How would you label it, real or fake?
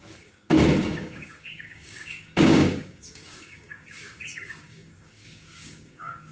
fake